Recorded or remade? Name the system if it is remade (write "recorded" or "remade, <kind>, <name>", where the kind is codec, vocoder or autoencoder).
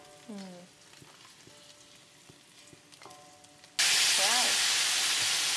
recorded